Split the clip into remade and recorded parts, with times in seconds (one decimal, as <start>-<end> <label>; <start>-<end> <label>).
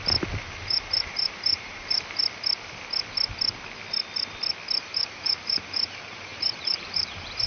0.0-0.6 recorded; 0.6-2.2 remade; 2.2-4.8 recorded; 4.8-7.5 remade